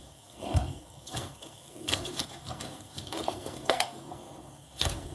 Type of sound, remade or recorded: remade